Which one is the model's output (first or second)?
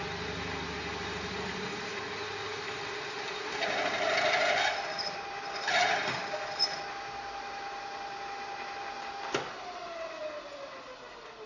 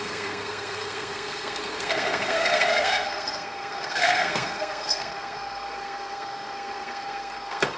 second